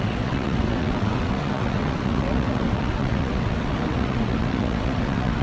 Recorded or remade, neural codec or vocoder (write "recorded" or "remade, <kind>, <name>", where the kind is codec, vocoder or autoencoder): remade, vocoder, WaveNeXt